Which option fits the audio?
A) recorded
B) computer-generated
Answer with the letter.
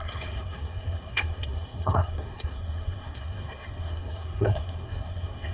B